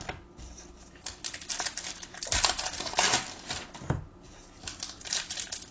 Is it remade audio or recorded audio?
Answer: recorded